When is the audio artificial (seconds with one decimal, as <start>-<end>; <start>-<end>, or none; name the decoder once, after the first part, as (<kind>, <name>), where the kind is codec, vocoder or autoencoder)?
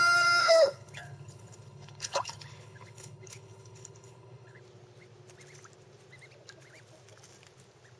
0.4-4.6 (codec, HILCodec)